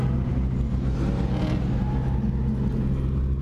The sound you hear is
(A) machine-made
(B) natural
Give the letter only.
B